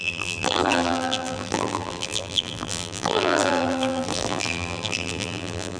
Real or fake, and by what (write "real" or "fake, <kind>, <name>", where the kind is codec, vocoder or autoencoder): fake, vocoder, BigVGAN v2